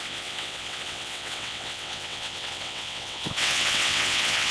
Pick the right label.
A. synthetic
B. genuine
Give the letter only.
A